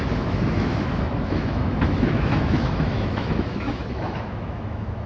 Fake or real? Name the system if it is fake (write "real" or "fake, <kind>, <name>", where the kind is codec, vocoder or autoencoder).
fake, autoencoder, DAC-VAE